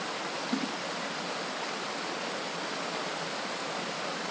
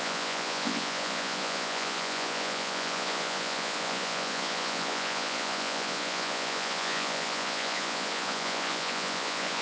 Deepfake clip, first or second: second